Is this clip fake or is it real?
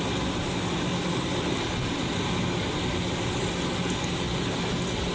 real